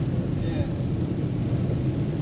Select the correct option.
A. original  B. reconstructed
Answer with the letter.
A